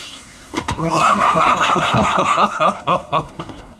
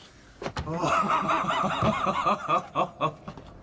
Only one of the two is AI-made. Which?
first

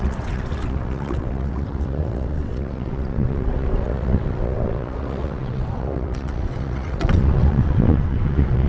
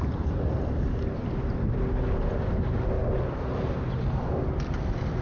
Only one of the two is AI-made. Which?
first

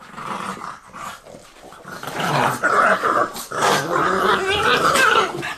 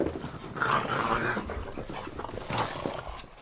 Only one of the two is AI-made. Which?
first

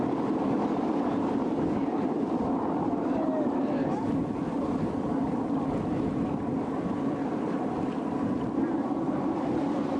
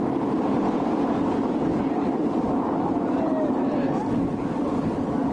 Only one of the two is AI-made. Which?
first